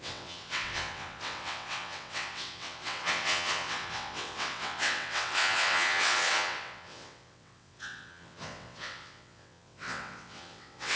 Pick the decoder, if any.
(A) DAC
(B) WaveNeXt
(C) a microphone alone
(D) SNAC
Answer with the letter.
B